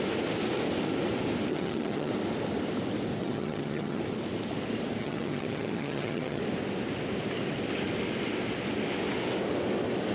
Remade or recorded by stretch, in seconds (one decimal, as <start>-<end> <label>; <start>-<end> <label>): 0.0-1.5 recorded; 1.5-2.1 remade; 2.1-3.2 recorded; 3.2-4.0 remade; 4.0-5.0 recorded; 5.0-6.4 remade; 6.4-10.1 recorded